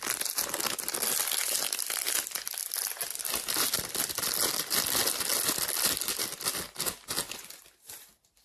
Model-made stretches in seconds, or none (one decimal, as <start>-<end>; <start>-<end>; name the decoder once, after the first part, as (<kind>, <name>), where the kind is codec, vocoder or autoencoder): none